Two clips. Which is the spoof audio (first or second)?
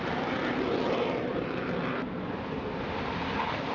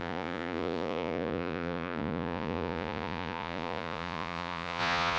second